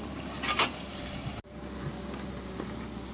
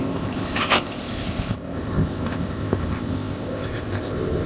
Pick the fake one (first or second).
second